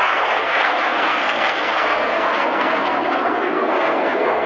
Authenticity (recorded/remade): remade